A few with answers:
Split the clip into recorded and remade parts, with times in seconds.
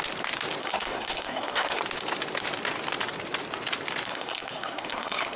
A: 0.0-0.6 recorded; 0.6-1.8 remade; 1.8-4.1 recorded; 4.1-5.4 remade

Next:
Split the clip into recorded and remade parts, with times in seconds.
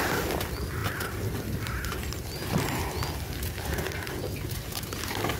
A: 0.0-0.8 recorded; 0.8-2.2 remade; 2.2-5.4 recorded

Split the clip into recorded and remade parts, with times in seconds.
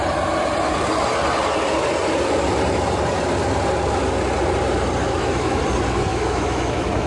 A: 0.0-5.0 recorded; 5.0-5.6 remade; 5.6-6.1 recorded; 6.1-7.1 remade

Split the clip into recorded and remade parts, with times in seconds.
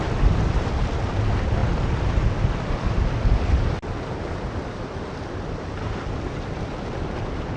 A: 0.0-7.6 recorded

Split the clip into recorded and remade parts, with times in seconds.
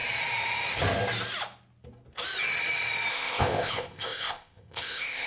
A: 0.0-3.1 recorded; 3.1-5.3 remade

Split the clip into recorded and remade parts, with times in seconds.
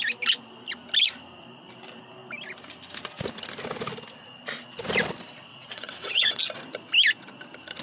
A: 0.0-5.5 recorded; 5.5-6.4 remade; 6.4-7.8 recorded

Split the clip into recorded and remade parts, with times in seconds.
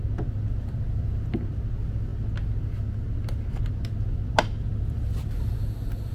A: 0.0-6.1 recorded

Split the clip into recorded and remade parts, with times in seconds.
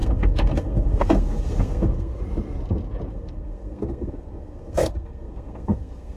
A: 0.0-2.2 remade; 2.2-3.1 recorded; 3.1-6.2 remade